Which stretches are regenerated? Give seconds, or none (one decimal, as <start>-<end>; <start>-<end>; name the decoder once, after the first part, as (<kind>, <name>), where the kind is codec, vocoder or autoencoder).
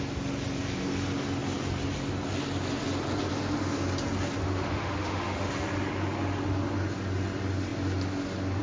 4.4-5.5 (autoencoder, DAC-VAE)